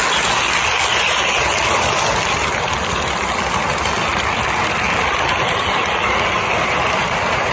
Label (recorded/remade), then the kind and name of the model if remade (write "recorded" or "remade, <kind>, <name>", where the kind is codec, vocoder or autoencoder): recorded